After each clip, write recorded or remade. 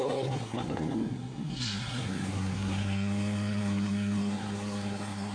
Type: remade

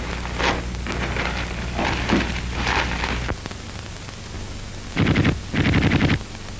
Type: recorded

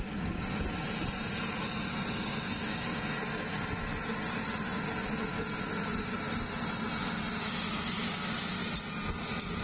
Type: recorded